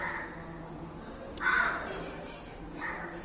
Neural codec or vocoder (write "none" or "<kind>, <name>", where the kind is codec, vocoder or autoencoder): none